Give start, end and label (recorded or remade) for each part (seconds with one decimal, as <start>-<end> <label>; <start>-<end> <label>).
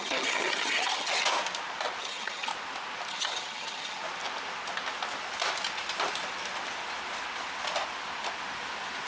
0.0-1.2 remade; 1.2-2.0 recorded; 2.0-2.5 remade; 2.5-3.1 recorded; 3.1-4.0 remade; 4.0-9.1 recorded